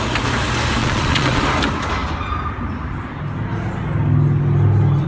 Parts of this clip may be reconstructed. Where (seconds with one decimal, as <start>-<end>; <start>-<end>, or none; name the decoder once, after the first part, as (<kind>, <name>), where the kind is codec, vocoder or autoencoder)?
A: 0.8-1.4 (vocoder, Vocos)